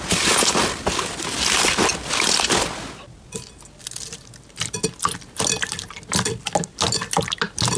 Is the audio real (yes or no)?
yes